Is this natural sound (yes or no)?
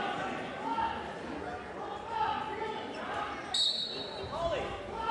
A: yes